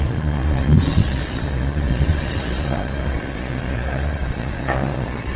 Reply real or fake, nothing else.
fake